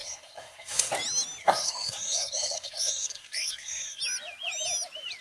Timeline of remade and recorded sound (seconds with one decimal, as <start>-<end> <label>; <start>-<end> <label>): 0.0-0.9 remade; 0.9-1.4 recorded; 1.4-4.0 remade; 4.0-5.2 recorded